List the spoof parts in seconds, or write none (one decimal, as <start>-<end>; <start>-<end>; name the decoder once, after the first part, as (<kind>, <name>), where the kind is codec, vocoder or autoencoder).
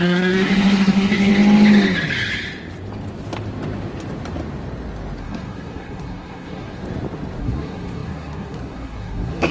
0.0-1.3 (codec, SNAC); 5.2-6.8; 7.4-9.5